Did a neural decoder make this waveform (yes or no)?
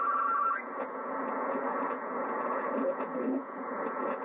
yes